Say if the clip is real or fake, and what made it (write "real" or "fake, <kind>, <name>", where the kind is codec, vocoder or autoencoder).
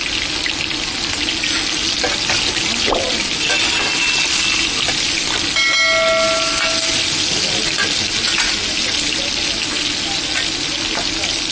real